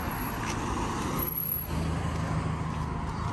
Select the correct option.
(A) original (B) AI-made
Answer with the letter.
A